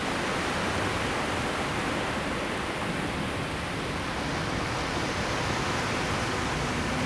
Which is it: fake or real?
real